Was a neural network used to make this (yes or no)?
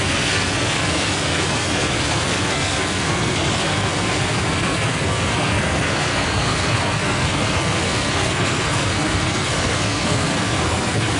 yes